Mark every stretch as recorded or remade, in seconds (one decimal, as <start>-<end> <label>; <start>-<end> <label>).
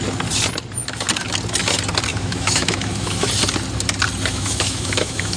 0.0-2.1 recorded; 2.1-3.3 remade; 3.3-4.3 recorded; 4.3-5.4 remade